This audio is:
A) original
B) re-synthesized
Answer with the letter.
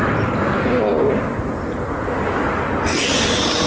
A